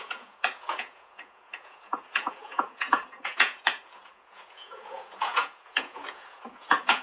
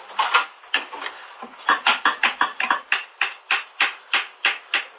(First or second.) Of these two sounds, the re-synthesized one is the first